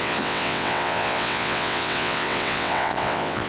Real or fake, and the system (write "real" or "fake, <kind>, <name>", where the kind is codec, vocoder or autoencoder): fake, vocoder, WaveNeXt